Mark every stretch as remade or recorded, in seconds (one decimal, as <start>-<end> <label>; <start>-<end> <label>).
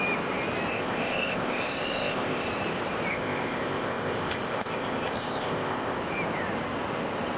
0.0-0.7 recorded; 0.7-2.5 remade; 2.5-3.1 recorded; 3.1-6.0 remade; 6.0-7.4 recorded